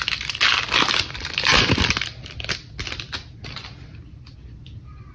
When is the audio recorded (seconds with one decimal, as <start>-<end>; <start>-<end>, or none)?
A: 0.0-5.1